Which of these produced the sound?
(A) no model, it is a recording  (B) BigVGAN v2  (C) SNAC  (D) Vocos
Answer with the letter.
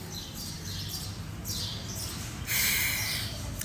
B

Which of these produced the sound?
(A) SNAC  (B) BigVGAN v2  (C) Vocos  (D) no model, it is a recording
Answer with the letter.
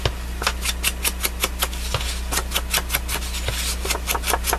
D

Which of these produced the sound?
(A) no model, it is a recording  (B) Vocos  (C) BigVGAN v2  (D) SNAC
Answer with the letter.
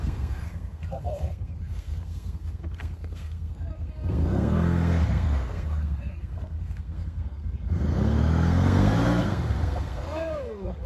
D